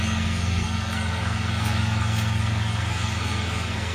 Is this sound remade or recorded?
remade